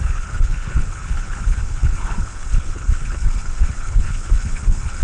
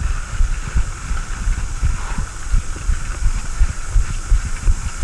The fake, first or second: first